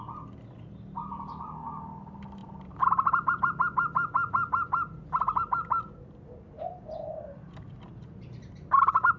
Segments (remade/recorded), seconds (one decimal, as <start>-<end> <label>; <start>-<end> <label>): 0.0-9.2 recorded